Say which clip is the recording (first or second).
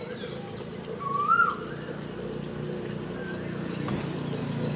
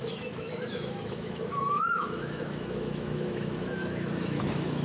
first